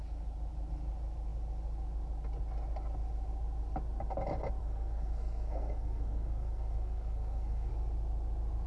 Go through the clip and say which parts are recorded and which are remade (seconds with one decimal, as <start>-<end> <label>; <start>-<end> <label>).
0.0-4.6 recorded; 4.6-7.7 remade; 7.7-8.7 recorded